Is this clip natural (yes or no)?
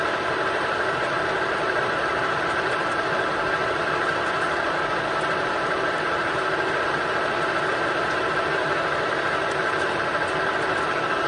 no